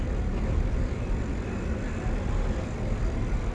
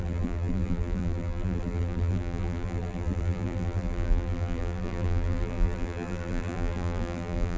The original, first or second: first